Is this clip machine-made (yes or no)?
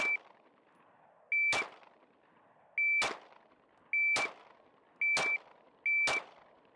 no